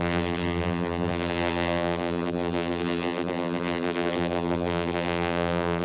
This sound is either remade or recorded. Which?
remade